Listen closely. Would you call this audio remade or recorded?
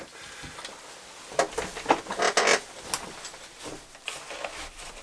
recorded